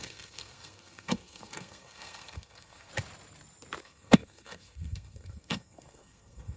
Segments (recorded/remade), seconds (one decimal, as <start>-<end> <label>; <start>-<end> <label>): 0.0-2.9 remade; 2.9-3.8 recorded; 3.8-6.6 remade